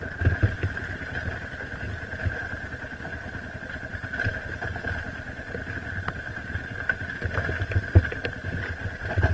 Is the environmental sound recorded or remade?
recorded